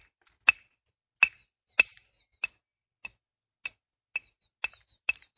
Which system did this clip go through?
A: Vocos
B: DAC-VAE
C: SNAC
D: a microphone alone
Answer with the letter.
D